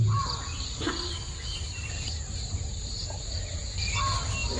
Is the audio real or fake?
real